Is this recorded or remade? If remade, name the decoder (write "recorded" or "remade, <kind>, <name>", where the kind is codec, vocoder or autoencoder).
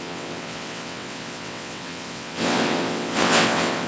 remade, vocoder, WaveNeXt